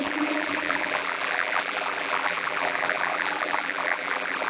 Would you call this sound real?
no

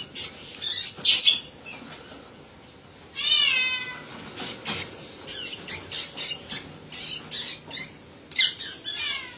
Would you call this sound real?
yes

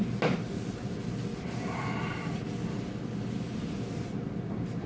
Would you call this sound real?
yes